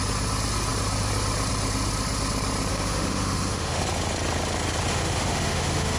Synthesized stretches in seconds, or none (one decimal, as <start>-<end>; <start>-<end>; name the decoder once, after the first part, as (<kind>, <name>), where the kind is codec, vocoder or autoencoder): 2.7-3.8 (autoencoder, DAC-VAE); 4.9-6.0